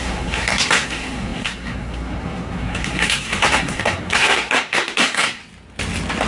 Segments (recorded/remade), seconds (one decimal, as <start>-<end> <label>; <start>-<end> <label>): 0.0-5.4 remade; 5.4-6.3 recorded